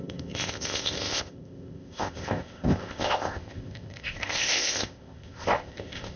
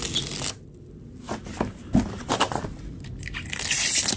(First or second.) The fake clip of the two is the first